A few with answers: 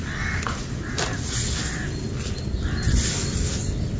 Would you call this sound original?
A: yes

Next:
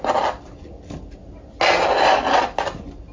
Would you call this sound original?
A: yes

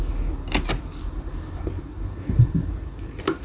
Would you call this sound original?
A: yes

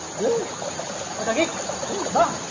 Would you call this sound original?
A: yes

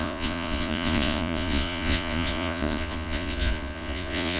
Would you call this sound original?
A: no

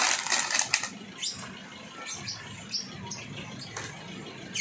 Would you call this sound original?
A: yes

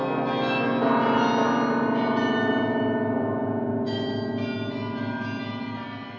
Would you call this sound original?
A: yes